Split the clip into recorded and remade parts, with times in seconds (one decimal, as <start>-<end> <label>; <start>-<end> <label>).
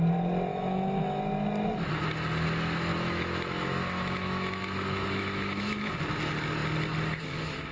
0.0-0.5 recorded; 0.5-1.2 remade; 1.2-2.9 recorded; 2.9-5.9 remade; 5.9-7.7 recorded